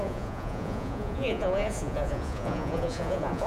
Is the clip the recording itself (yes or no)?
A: no